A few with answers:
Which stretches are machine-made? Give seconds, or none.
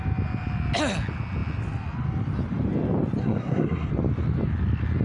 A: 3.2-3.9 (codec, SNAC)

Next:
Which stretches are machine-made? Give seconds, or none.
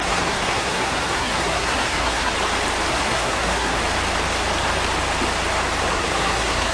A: 0.0-2.3 (codec, SNAC); 2.9-3.8; 5.9-6.7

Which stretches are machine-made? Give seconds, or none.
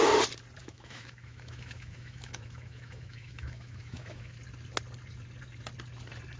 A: 0.6-4.4 (autoencoder, DAC-VAE)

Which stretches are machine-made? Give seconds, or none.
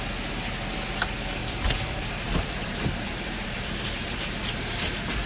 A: 1.4-4.6 (vocoder, BigVGAN v2)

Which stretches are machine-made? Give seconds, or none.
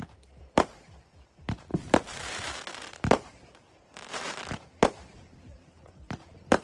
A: 0.0-6.6 (vocoder, BigVGAN v2)